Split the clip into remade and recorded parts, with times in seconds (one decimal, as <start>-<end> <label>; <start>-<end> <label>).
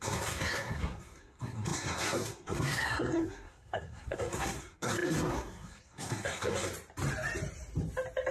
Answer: 0.0-6.7 remade; 6.7-8.3 recorded